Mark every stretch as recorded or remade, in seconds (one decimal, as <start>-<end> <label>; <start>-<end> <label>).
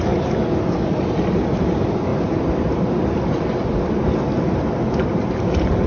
0.0-5.9 recorded